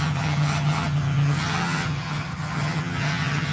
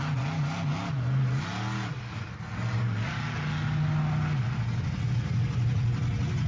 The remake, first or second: first